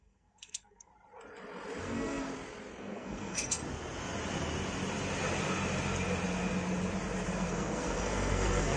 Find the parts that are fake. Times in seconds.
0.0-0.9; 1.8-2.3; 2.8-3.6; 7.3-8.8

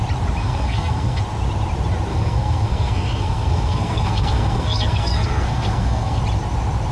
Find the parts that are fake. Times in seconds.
0.4-1.2; 2.1-6.2

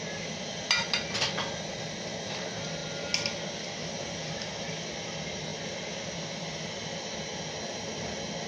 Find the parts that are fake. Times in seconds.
none

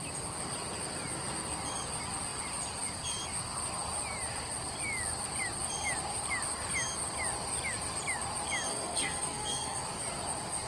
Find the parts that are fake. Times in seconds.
8.7-9.8